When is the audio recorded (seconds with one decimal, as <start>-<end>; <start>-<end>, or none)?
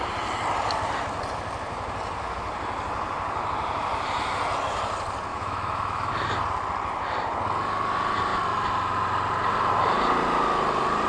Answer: 0.0-5.3; 6.1-11.1